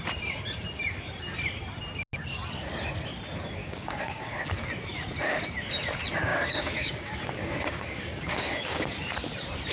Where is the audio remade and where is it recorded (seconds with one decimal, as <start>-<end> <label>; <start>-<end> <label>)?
0.0-3.6 recorded; 3.6-4.4 remade; 4.4-6.3 recorded; 6.3-8.9 remade; 8.9-9.7 recorded